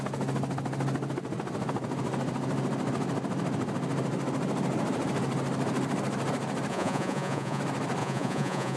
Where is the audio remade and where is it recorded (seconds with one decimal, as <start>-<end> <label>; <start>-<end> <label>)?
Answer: 0.0-6.7 recorded; 6.7-7.6 remade; 7.6-8.0 recorded; 8.0-8.8 remade